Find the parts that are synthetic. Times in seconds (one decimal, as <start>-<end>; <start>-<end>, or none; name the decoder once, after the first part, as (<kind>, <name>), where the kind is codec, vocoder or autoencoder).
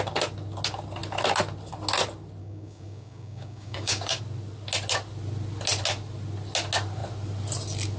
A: 2.4-4.2 (codec, DAC)